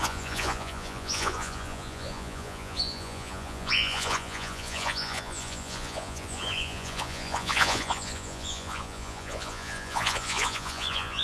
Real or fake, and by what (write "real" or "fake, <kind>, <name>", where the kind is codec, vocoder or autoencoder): fake, vocoder, Vocos